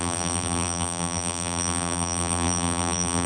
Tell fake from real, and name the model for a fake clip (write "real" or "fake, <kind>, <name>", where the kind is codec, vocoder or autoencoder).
fake, vocoder, BigVGAN v2